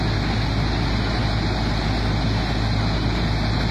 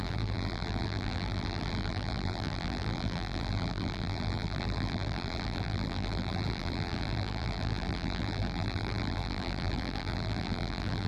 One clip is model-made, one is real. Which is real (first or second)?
first